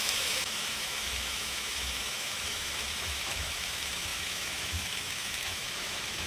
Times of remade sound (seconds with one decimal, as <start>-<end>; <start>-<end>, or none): 0.0-6.3